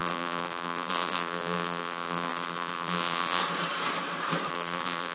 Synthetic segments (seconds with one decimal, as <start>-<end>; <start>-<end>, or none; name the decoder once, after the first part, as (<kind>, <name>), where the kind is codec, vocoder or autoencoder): 0.0-3.4 (vocoder, BigVGAN v2); 4.5-5.1